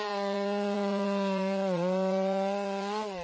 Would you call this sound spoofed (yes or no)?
yes